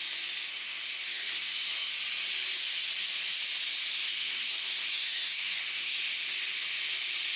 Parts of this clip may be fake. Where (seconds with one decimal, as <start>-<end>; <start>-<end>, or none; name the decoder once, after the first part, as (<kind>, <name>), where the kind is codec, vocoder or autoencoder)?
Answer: 0.5-1.9 (codec, SNAC); 3.9-6.1